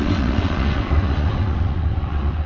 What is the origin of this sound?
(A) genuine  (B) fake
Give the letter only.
B